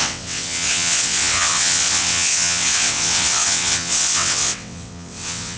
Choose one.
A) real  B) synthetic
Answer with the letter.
B